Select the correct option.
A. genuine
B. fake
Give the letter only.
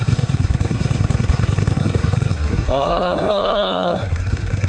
B